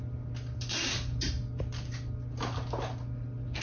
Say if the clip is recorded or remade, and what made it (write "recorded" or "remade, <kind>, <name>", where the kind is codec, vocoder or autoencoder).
recorded